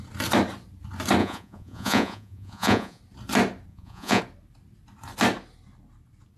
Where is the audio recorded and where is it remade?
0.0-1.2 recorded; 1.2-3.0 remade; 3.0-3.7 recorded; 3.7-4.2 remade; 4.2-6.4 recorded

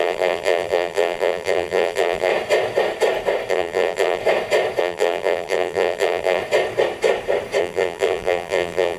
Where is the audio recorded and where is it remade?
0.0-2.3 remade; 2.3-3.5 recorded; 3.5-4.2 remade; 4.2-4.8 recorded; 4.8-6.4 remade; 6.4-7.6 recorded; 7.6-9.0 remade

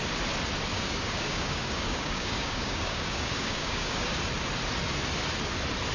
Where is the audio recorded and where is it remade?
0.0-0.7 recorded; 0.7-4.2 remade; 4.2-5.9 recorded

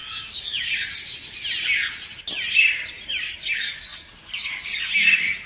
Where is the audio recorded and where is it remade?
0.0-0.7 remade; 0.7-5.5 recorded

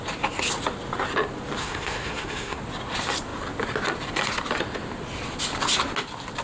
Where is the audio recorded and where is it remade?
0.0-1.6 recorded; 1.6-2.6 remade; 2.6-6.4 recorded